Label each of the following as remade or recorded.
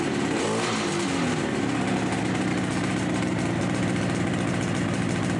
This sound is recorded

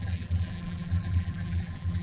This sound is remade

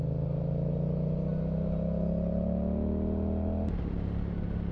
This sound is recorded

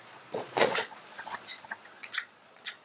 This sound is remade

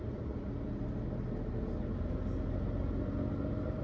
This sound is recorded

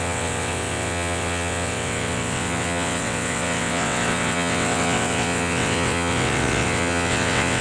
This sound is remade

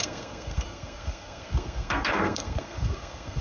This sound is remade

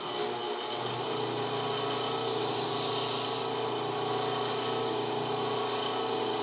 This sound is recorded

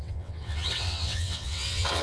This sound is remade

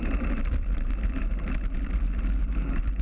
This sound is recorded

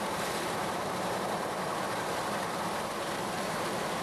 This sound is remade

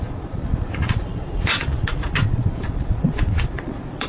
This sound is remade